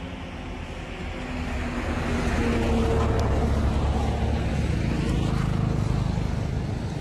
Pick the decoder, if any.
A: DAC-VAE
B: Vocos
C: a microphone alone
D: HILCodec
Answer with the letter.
C